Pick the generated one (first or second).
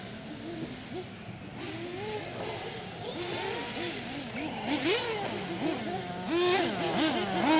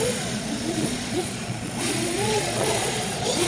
second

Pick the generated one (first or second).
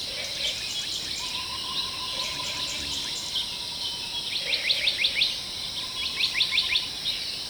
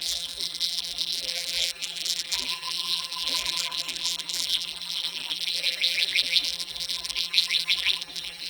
second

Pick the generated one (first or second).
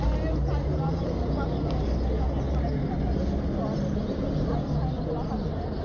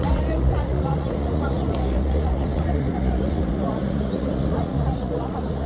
second